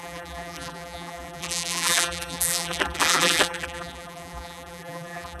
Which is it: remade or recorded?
remade